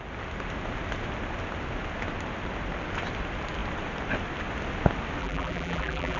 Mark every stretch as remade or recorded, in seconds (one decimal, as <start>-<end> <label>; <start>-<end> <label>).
0.0-5.2 recorded; 5.2-6.2 remade

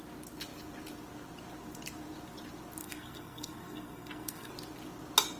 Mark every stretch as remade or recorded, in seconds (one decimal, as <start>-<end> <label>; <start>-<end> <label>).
0.0-2.8 recorded; 2.8-4.5 remade; 4.5-5.4 recorded

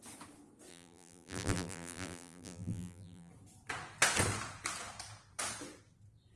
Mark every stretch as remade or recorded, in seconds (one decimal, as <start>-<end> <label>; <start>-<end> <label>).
0.0-0.7 recorded; 0.7-3.3 remade; 3.3-6.4 recorded

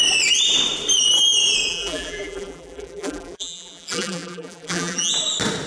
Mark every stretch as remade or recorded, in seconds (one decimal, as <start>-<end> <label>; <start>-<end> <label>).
0.0-1.7 recorded; 1.7-5.1 remade; 5.1-5.7 recorded